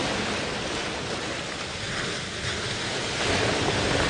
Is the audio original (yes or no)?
yes